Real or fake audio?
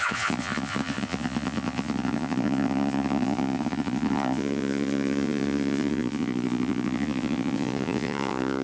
fake